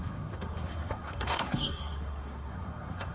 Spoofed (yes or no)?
yes